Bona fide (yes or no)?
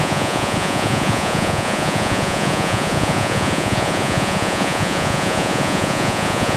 no